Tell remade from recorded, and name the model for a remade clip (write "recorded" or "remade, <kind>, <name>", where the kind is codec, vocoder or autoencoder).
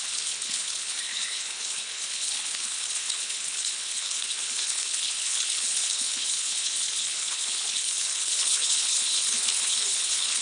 remade, codec, HILCodec